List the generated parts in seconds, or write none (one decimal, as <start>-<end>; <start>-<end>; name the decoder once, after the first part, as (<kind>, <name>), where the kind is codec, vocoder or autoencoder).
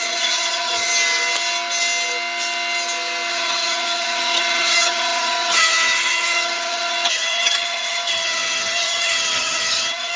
0.0-0.9 (vocoder, HiFi-GAN); 3.3-10.2